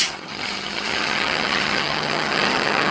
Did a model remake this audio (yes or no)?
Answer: yes